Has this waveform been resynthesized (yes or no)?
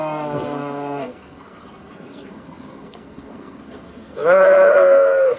yes